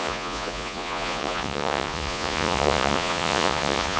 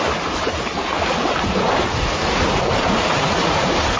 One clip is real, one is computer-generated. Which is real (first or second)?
second